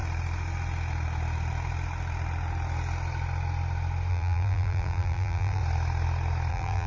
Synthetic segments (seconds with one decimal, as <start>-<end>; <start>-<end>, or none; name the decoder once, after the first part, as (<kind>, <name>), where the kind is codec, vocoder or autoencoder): 4.1-5.6 (vocoder, BigVGAN v2); 6.5-6.9